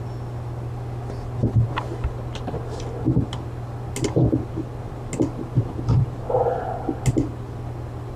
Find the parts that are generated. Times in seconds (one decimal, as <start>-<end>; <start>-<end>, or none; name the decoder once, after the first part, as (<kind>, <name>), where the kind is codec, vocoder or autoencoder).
none